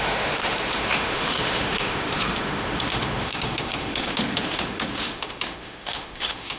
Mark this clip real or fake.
fake